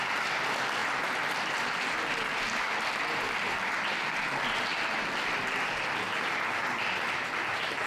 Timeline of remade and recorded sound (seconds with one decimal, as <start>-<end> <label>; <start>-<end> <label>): 0.0-7.9 recorded

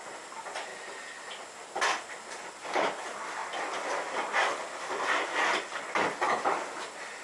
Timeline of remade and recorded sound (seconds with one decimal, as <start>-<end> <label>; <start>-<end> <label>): 0.0-7.2 recorded

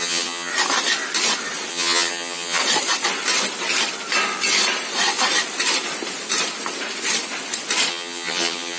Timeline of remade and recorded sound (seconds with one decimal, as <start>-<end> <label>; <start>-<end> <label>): 0.0-0.5 remade; 0.5-1.7 recorded; 1.7-2.6 remade; 2.6-7.9 recorded; 7.9-8.8 remade

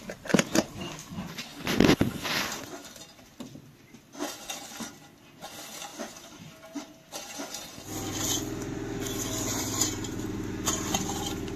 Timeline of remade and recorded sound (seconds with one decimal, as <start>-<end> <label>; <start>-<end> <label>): 0.0-0.5 recorded; 0.5-1.0 remade; 1.0-5.9 recorded; 5.9-7.1 remade; 7.1-9.5 recorded; 9.5-10.5 remade; 10.5-11.6 recorded

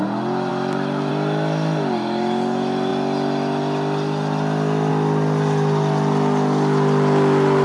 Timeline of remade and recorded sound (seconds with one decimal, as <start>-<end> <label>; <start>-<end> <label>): 0.0-7.6 recorded

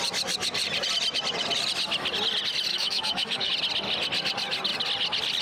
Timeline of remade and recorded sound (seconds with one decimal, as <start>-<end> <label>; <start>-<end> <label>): 0.0-2.7 recorded; 2.7-3.5 remade; 3.5-5.4 recorded

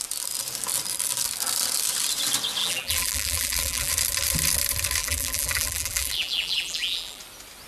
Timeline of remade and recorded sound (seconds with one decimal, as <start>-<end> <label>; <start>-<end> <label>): 0.0-2.6 recorded; 2.6-3.9 remade; 3.9-5.0 recorded; 5.0-7.2 remade; 7.2-7.7 recorded